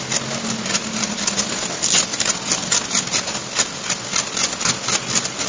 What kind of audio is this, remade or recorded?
recorded